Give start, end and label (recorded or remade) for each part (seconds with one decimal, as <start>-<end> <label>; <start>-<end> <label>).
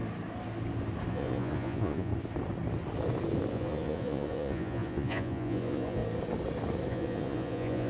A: 0.0-1.1 recorded; 1.1-2.1 remade; 2.1-3.5 recorded; 3.5-6.0 remade; 6.0-6.9 recorded; 6.9-7.9 remade